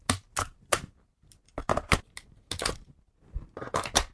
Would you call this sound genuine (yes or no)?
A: yes